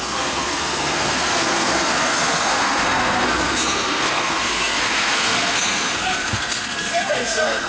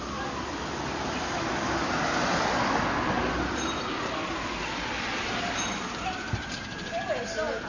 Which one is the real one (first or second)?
second